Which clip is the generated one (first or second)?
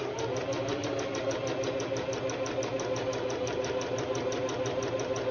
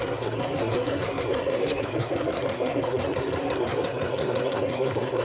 second